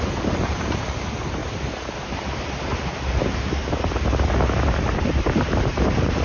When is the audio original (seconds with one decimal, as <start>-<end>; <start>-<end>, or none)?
1.4-2.6; 3.6-5.0